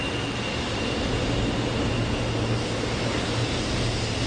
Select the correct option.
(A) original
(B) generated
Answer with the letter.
A